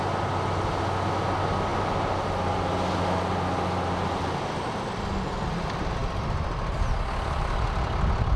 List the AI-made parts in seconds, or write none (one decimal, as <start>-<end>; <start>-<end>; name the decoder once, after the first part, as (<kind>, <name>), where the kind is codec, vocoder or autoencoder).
none